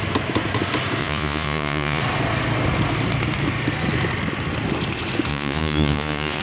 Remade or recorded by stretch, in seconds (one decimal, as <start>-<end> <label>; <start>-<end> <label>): 0.0-1.0 recorded; 1.0-2.0 remade; 2.0-5.3 recorded; 5.3-6.4 remade